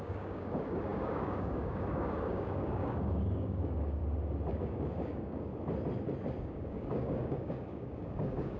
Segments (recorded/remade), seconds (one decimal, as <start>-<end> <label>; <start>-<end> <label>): 0.0-4.0 remade; 4.0-4.5 recorded; 4.5-5.5 remade; 5.5-6.4 recorded; 6.4-8.6 remade

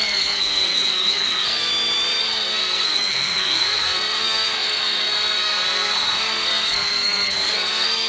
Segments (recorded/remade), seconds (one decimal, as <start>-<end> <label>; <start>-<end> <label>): 0.0-1.7 remade; 1.7-2.2 recorded; 2.2-8.1 remade

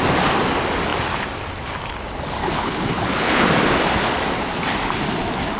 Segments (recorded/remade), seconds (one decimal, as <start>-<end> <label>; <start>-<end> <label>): 0.0-2.4 recorded; 2.4-3.5 remade; 3.5-5.6 recorded

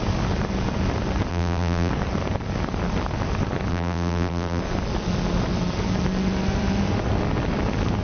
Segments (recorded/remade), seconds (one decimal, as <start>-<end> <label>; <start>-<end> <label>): 0.0-1.3 recorded; 1.3-1.9 remade; 1.9-3.7 recorded; 3.7-4.6 remade; 4.6-8.0 recorded

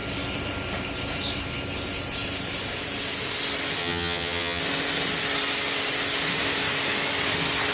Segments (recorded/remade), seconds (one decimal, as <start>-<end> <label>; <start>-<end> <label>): 0.0-3.8 recorded; 3.8-4.6 remade; 4.6-7.7 recorded

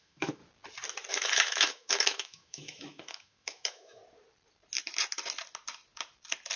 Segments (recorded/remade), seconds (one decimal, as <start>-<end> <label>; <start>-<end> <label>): 0.0-0.4 remade; 0.4-1.1 recorded; 1.1-4.0 remade; 4.0-6.6 recorded

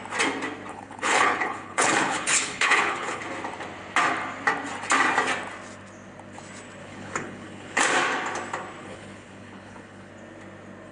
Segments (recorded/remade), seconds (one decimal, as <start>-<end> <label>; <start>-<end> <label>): 0.0-0.7 recorded; 0.7-3.2 remade; 3.2-6.8 recorded; 6.8-7.8 remade; 7.8-8.8 recorded; 8.8-10.1 remade; 10.1-10.9 recorded